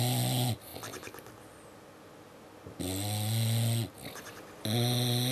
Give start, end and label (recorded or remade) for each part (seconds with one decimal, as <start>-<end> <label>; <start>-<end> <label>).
0.0-5.3 recorded